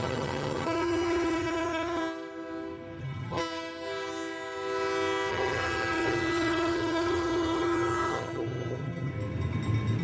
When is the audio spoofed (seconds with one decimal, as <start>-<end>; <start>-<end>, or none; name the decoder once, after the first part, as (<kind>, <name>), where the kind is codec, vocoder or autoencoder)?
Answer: 0.0-2.0 (vocoder, HiFi-GAN); 3.0-3.4; 5.3-9.1